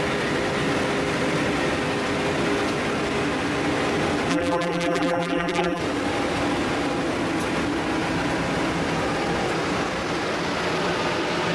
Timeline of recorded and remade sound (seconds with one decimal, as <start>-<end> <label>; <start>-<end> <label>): 0.0-4.3 recorded; 4.3-5.8 remade; 5.8-11.5 recorded